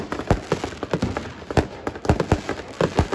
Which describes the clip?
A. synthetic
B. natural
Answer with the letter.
B